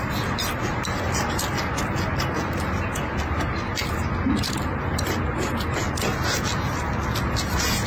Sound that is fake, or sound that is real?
real